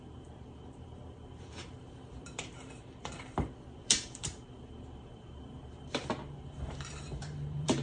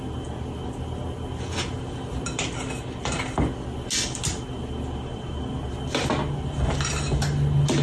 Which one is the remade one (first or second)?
first